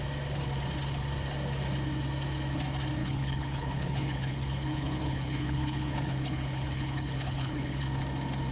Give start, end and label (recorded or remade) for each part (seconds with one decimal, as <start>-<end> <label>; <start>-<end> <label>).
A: 0.0-3.0 recorded; 3.0-7.8 remade; 7.8-8.5 recorded